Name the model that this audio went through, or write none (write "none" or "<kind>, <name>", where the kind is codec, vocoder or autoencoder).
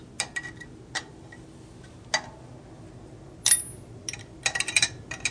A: none